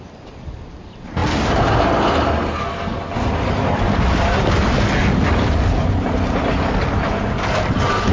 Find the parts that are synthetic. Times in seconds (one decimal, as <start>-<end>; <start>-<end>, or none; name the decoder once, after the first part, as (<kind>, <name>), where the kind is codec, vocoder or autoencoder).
none